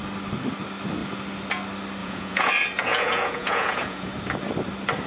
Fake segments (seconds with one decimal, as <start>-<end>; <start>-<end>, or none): 2.0-2.5; 2.9-4.1